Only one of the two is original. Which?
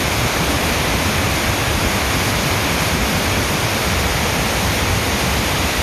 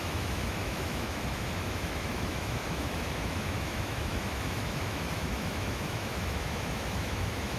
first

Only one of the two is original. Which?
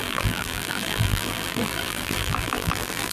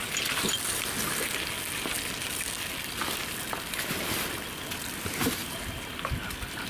second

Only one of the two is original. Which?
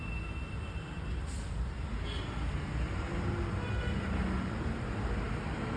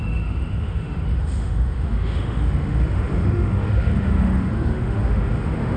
first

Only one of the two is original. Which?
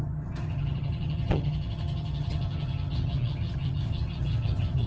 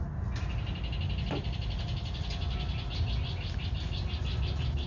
second